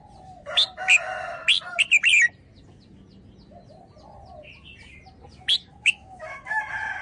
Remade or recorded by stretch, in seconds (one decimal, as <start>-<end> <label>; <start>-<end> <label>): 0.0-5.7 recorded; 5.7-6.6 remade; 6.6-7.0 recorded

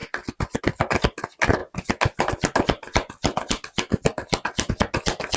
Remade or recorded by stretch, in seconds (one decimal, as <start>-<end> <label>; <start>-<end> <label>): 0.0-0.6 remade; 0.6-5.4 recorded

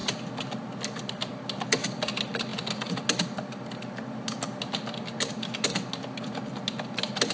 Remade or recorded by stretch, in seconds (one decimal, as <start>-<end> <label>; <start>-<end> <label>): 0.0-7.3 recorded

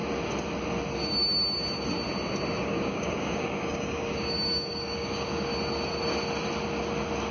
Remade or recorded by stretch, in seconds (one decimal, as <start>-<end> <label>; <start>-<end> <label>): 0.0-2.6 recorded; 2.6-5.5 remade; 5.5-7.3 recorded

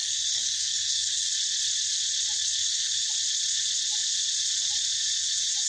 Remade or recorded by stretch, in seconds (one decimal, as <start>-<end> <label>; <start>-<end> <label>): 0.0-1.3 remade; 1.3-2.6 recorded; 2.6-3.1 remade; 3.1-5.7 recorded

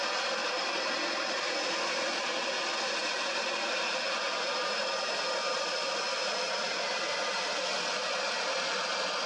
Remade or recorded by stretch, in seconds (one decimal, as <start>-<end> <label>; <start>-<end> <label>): 0.0-0.4 recorded; 0.4-0.9 remade; 0.9-9.3 recorded

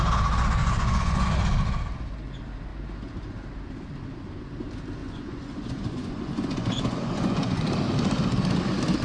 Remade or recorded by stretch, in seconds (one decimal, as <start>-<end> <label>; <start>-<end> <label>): 0.0-0.6 recorded; 0.6-1.3 remade; 1.3-5.0 recorded; 5.0-7.6 remade; 7.6-9.0 recorded